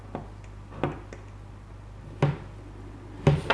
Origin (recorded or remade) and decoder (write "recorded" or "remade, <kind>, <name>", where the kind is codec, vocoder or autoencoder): recorded